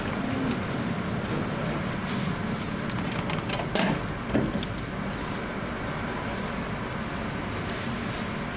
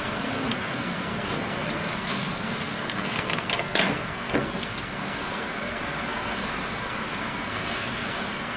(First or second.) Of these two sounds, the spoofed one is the second